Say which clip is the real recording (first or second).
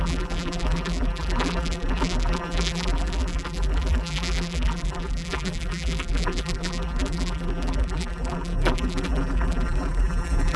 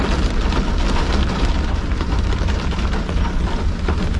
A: second